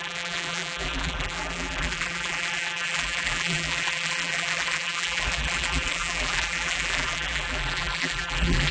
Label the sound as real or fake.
fake